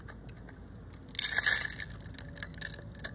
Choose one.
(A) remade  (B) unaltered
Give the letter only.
B